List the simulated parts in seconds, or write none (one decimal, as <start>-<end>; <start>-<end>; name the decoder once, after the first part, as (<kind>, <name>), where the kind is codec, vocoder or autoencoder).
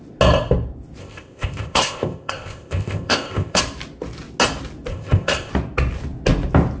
1.0-3.6 (codec, ZipCodec); 4.9-5.5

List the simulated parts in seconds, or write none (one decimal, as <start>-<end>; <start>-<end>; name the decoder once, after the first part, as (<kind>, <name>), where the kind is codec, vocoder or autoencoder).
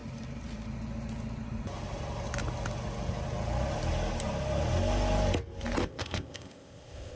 5.8-7.2 (codec, ZipCodec)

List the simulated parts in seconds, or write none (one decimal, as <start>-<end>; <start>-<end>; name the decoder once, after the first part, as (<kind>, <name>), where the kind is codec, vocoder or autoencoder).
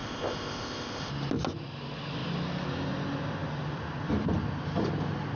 0.0-1.1 (codec, ZipCodec)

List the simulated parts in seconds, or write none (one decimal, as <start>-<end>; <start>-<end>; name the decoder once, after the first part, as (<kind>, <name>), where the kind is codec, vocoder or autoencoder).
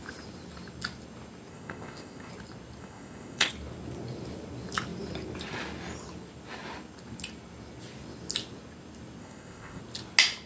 1.5-2.3 (codec, ZipCodec); 2.8-3.5; 9.2-9.8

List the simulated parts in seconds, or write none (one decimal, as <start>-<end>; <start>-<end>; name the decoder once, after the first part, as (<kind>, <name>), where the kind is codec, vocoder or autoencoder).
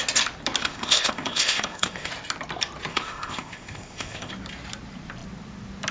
0.6-2.1 (codec, ZipCodec); 2.9-4.3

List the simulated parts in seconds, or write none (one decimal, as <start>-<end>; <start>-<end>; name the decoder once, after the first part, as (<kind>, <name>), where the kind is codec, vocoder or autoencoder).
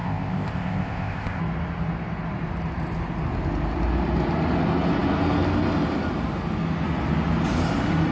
0.0-1.4 (codec, ZipCodec)